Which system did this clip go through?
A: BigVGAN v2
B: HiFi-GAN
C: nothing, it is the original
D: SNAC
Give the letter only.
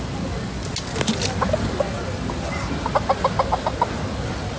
C